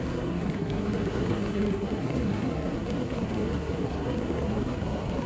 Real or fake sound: fake